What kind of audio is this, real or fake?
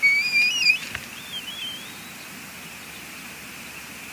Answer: real